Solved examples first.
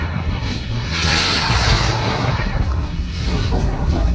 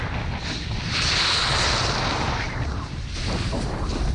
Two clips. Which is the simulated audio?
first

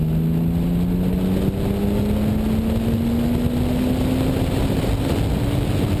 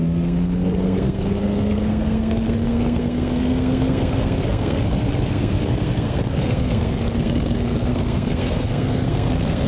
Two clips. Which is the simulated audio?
second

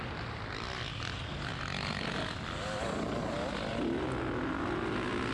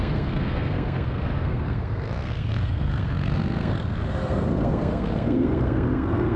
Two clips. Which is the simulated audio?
second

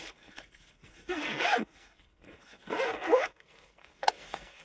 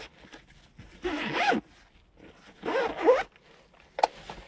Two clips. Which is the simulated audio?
first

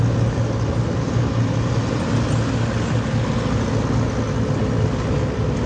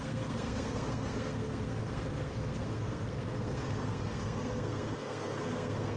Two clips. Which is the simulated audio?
second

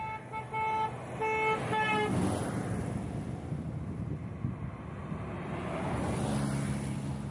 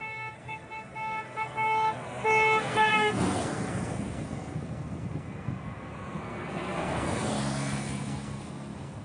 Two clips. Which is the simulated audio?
second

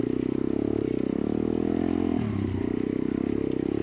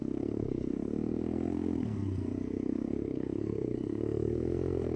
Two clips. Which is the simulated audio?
second